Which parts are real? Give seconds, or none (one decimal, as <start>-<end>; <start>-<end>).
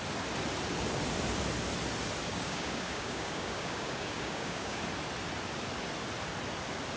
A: 0.0-2.3; 4.8-7.0